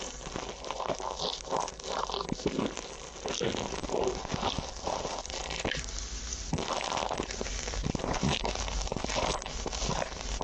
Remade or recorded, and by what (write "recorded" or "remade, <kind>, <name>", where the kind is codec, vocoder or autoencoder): recorded